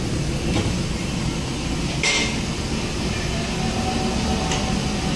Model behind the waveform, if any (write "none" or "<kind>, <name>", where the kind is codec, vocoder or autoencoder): none